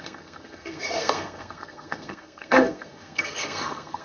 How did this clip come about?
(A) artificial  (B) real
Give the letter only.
A